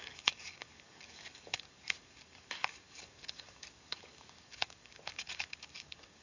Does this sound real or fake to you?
fake